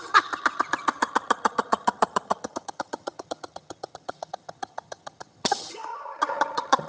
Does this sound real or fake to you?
fake